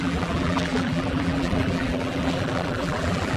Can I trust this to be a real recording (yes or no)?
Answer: no